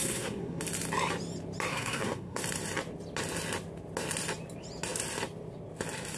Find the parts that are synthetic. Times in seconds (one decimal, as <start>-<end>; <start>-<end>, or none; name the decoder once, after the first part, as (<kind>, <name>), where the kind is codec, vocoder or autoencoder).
0.0-0.6 (codec, SNAC); 1.7-2.4